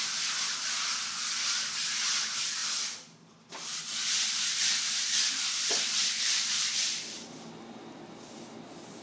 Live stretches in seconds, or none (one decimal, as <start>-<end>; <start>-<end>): 0.0-2.6; 7.9-9.0